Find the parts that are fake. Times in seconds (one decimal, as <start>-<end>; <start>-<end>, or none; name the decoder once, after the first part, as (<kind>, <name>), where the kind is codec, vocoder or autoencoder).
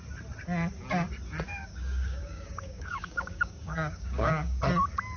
1.5-4.6 (codec, DAC)